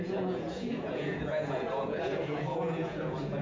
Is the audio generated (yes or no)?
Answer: yes